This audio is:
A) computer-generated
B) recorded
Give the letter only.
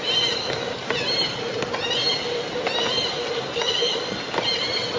B